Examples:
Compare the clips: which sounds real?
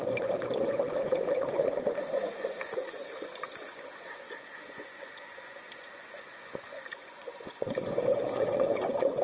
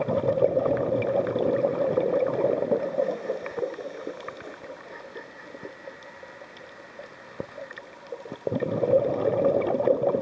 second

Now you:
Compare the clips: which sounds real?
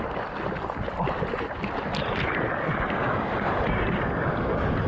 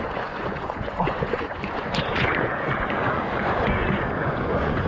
first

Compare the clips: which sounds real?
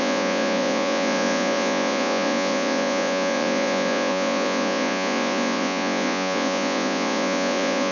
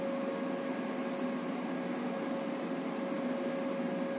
second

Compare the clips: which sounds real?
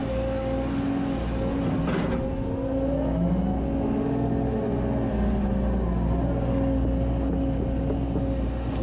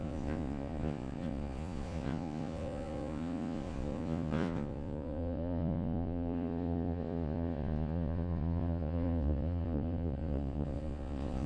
first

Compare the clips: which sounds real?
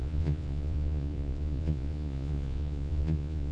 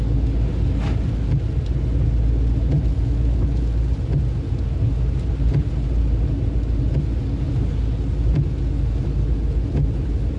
second